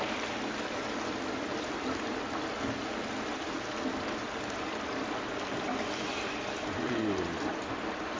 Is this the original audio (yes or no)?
no